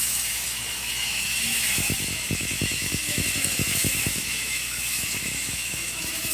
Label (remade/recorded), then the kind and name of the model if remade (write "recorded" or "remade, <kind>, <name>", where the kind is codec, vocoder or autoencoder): remade, autoencoder, DAC-VAE